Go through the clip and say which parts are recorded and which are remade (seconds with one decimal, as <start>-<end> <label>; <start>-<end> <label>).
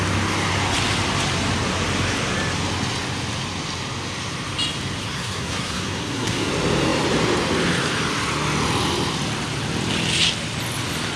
0.0-5.0 recorded; 5.0-6.5 remade; 6.5-11.2 recorded